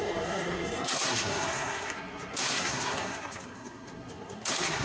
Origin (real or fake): fake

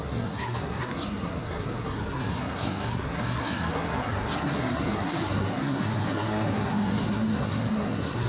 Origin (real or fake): fake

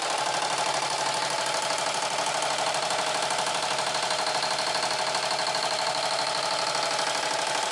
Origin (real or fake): real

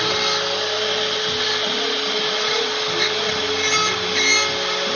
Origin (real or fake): real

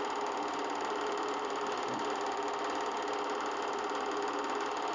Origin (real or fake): real